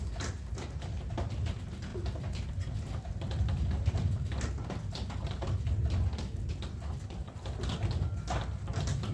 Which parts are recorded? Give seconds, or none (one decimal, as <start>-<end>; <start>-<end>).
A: 0.0-9.1